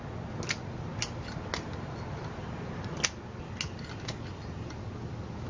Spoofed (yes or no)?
no